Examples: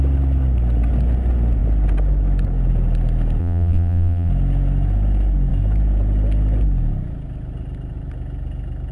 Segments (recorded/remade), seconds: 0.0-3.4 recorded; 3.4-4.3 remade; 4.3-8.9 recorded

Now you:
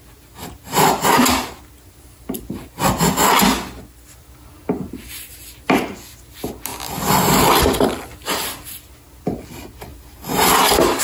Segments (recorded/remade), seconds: 0.0-11.0 recorded

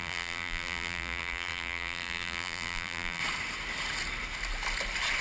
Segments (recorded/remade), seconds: 0.0-3.2 remade; 3.2-5.2 recorded

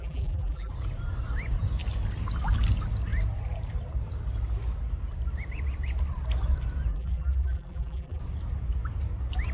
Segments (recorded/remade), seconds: 0.0-0.7 remade; 0.7-6.9 recorded; 6.9-8.2 remade; 8.2-9.5 recorded

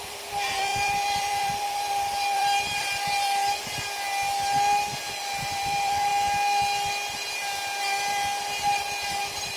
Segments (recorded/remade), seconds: 0.0-3.4 remade; 3.4-5.1 recorded; 5.1-6.1 remade; 6.1-9.2 recorded; 9.2-9.6 remade

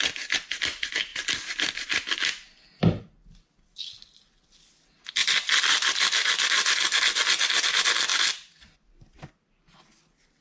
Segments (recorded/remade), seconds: 0.0-5.2 recorded; 5.2-6.3 remade; 6.3-10.4 recorded

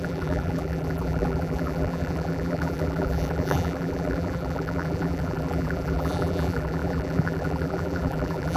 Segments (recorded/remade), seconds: 0.0-8.6 remade